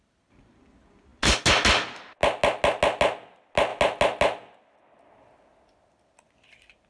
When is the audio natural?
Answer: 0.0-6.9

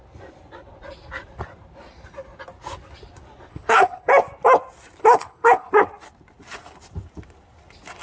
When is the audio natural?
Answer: 0.0-3.5; 4.1-5.0; 5.7-8.0

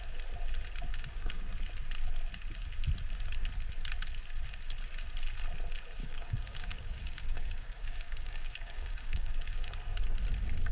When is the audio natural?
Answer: 0.0-0.9; 1.4-6.0; 9.7-10.7

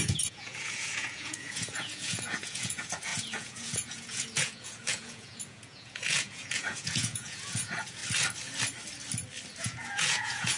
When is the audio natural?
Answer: 8.0-9.6

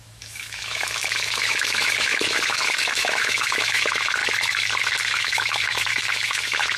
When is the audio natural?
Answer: 4.2-5.0

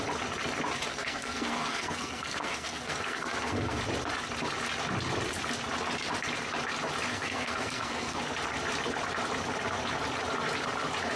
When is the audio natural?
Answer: 0.0-0.9; 3.8-7.1; 8.2-11.2

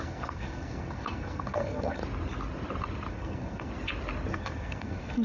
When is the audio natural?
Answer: 2.0-3.1; 3.7-4.3

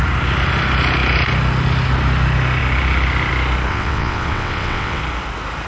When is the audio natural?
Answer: 0.0-3.7; 5.0-5.7